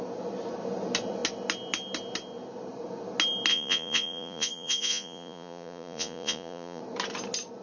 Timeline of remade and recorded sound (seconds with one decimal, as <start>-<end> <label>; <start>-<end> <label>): 0.0-3.5 recorded; 3.5-6.8 remade; 6.8-7.6 recorded